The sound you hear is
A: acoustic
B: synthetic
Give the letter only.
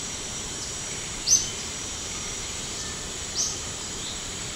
B